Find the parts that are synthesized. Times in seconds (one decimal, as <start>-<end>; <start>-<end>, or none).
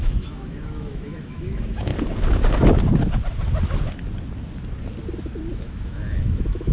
0.0-1.9; 5.5-6.7